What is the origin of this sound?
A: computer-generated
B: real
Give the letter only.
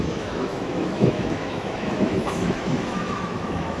A